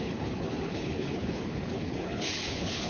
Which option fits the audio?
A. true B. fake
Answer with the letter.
B